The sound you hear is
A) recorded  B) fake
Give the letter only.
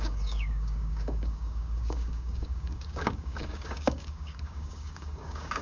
B